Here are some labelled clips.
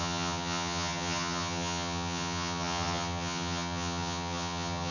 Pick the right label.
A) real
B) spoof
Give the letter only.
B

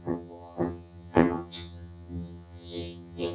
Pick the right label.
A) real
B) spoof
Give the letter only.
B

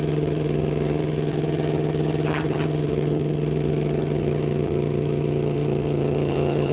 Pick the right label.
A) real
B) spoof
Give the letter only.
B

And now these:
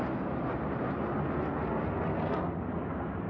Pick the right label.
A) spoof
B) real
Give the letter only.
B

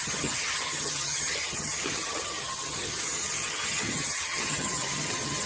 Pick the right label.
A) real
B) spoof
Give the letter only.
B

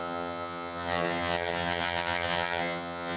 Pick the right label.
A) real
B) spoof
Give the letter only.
B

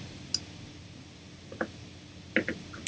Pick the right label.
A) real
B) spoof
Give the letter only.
A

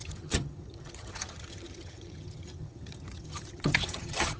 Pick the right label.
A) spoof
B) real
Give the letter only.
A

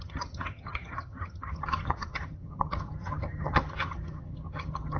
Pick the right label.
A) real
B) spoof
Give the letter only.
B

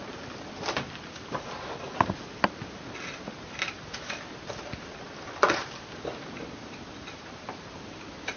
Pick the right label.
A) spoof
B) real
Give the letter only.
B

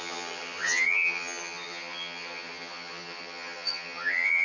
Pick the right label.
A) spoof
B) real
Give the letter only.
A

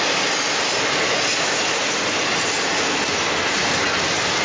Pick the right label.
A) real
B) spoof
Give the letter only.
A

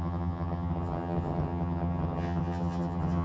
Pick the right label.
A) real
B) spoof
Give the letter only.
B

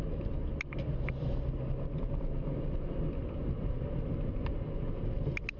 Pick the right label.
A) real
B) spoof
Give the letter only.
A